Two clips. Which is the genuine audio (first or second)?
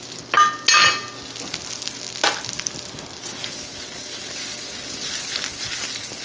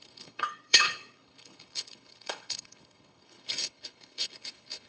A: first